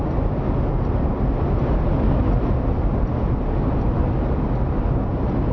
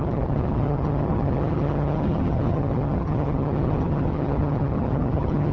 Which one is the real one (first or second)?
first